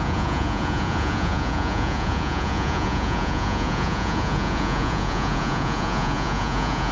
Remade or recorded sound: remade